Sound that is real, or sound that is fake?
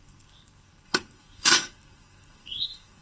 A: fake